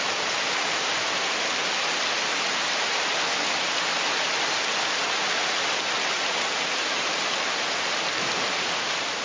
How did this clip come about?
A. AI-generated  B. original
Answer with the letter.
B